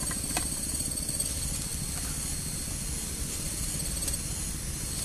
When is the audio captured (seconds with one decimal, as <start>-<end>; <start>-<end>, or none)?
0.0-5.0